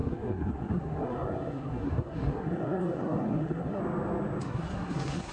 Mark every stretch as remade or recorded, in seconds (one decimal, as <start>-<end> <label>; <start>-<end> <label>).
0.0-3.8 remade; 3.8-4.4 recorded; 4.4-5.3 remade